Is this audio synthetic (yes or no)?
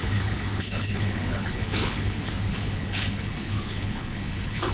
yes